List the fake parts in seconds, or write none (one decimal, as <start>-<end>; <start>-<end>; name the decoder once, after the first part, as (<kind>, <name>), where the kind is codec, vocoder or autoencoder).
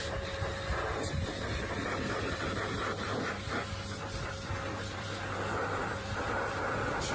0.9-7.1 (vocoder, BigVGAN v2)